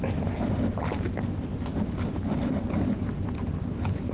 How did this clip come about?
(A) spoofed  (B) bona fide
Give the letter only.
B